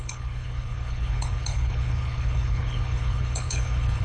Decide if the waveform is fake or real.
fake